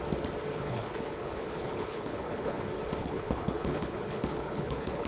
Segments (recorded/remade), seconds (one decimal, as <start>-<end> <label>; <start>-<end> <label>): 0.0-0.5 recorded; 0.5-2.6 remade; 2.6-3.0 recorded; 3.0-5.1 remade